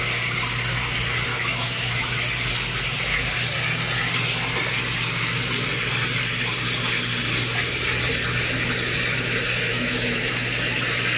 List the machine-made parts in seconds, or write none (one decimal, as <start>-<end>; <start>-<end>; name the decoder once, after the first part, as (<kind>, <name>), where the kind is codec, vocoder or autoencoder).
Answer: 1.3-2.2 (autoencoder, DAC-VAE); 9.7-10.3